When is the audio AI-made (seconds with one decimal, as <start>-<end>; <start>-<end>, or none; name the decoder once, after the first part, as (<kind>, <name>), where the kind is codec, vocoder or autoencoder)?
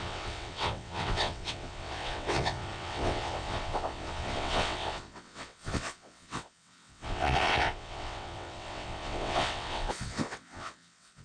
0.0-11.2 (vocoder, WaveNeXt)